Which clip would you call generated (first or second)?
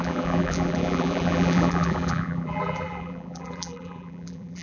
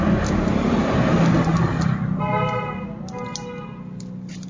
first